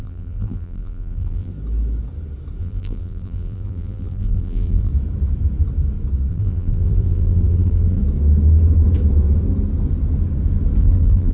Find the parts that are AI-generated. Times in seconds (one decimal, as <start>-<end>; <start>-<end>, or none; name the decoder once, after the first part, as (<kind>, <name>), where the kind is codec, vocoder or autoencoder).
0.0-1.5 (vocoder, BigVGAN v2); 2.6-4.9; 6.3-8.0; 10.8-11.3